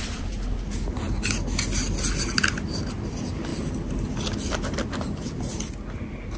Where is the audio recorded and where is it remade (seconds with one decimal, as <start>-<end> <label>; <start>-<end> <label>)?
0.0-6.4 recorded